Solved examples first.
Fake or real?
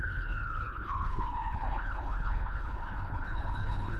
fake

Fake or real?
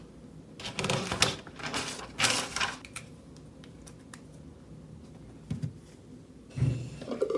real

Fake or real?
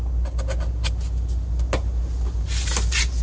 real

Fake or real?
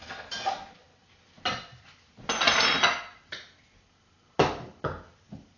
real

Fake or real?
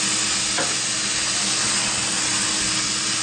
real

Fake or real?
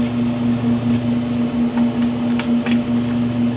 real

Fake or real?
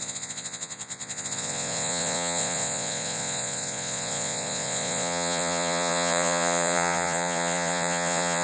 fake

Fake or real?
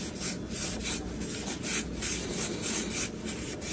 real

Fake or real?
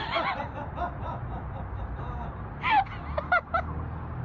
real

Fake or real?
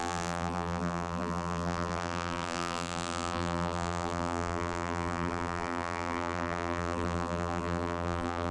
fake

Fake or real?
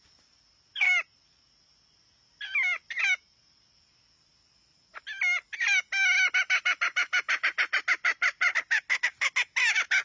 real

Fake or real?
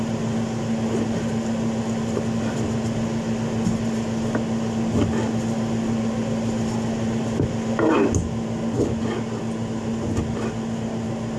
real